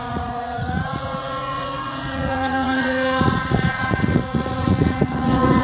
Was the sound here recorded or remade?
remade